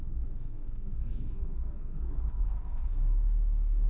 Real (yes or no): no